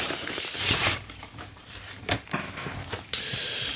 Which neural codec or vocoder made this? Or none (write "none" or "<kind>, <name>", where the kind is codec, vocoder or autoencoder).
vocoder, BigVGAN v2